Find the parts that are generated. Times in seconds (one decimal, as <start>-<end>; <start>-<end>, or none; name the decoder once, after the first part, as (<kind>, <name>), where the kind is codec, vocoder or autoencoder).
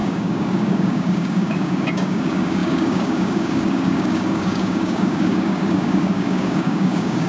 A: 0.0-7.3 (codec, DAC)